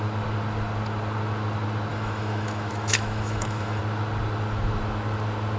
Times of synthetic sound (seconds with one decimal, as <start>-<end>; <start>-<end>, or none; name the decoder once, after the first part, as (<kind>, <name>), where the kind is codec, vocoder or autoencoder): 1.9-3.8 (autoencoder, DAC-VAE)